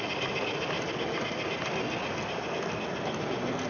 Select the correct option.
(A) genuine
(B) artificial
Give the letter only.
A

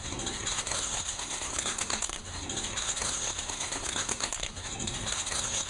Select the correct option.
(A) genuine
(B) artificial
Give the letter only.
B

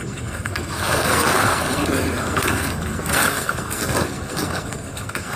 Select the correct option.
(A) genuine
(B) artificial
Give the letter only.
B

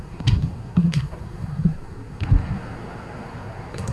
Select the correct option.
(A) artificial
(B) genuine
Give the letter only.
A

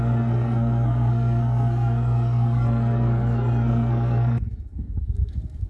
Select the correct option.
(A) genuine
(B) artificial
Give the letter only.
B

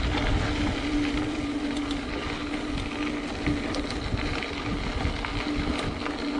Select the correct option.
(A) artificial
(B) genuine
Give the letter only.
B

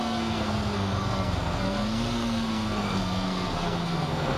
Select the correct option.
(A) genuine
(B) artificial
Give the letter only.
B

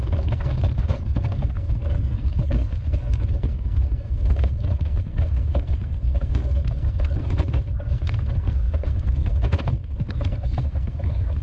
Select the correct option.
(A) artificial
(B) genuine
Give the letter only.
A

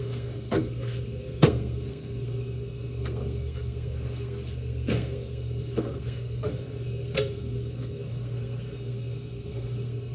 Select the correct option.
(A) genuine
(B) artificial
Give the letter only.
B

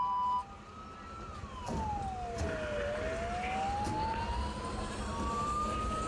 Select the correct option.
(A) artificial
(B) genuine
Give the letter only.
B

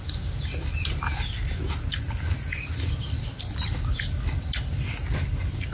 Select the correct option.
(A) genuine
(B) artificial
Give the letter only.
A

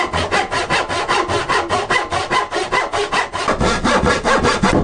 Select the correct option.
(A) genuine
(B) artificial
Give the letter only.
A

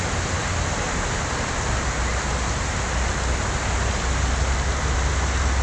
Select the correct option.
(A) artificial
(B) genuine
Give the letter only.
B